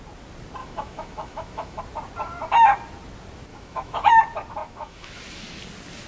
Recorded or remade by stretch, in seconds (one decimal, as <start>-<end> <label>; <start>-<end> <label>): 0.0-0.6 recorded; 0.6-1.8 remade; 1.8-3.5 recorded; 3.5-4.1 remade; 4.1-4.6 recorded; 4.6-5.2 remade; 5.2-6.1 recorded